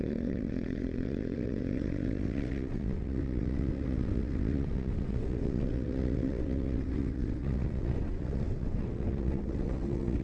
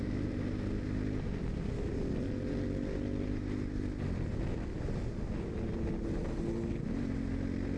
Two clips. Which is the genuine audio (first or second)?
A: second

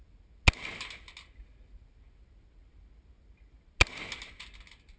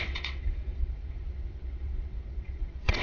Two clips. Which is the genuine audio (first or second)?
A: first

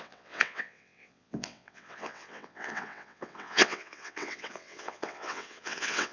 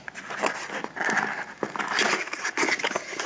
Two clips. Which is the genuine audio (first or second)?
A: second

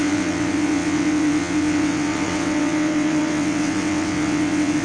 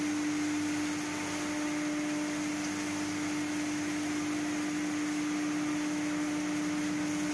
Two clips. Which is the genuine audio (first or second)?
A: second